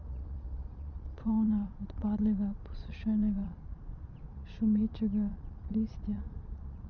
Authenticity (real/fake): fake